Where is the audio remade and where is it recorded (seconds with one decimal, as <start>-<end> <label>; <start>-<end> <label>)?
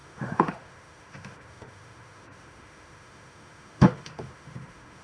0.0-5.0 remade